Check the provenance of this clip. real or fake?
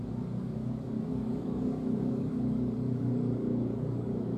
fake